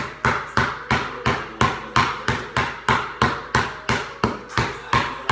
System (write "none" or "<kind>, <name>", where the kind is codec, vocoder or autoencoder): none